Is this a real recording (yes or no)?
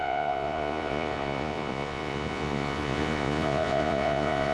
no